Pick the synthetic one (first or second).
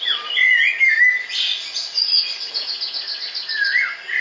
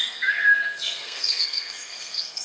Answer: second